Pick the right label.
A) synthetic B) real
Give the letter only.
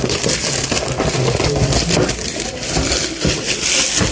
B